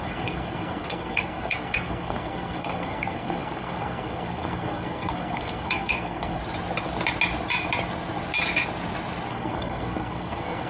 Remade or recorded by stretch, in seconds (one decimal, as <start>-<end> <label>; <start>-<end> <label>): 0.0-6.4 remade; 6.4-9.3 recorded; 9.3-10.7 remade